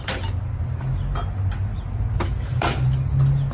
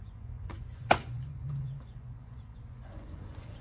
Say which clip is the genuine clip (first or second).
first